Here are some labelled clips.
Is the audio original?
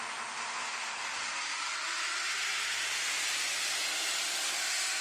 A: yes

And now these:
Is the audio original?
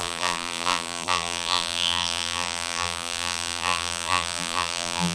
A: no